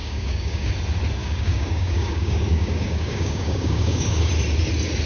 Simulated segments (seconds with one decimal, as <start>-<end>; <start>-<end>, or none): 0.0-0.7; 1.2-4.3